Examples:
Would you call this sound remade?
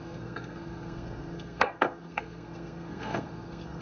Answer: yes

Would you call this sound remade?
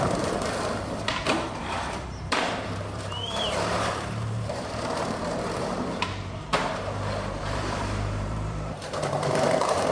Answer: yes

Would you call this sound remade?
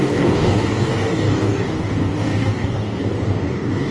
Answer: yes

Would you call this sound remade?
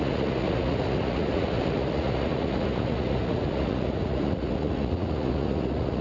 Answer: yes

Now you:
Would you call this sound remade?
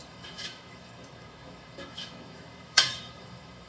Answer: yes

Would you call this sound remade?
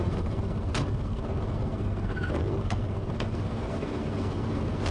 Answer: yes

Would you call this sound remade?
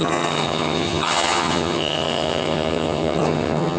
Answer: yes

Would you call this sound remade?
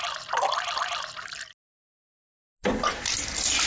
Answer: no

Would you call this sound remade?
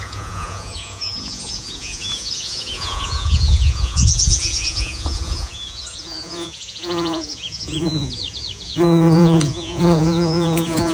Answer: yes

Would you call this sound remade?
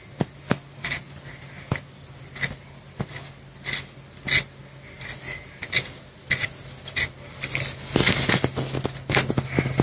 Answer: no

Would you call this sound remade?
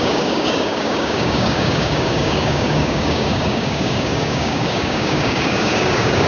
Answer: yes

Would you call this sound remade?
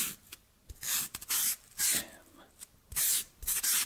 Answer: no